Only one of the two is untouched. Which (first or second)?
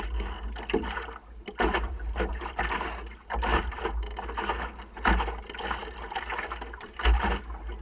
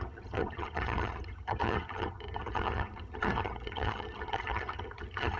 first